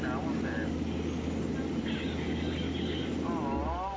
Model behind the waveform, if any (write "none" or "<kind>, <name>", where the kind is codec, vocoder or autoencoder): none